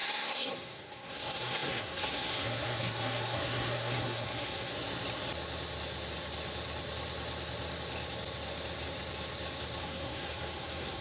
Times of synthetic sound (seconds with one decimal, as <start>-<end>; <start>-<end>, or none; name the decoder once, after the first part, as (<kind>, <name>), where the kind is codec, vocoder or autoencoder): 0.0-4.7 (codec, SNAC); 9.8-11.0